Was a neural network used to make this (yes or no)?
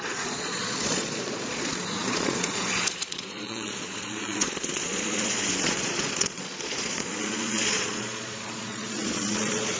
yes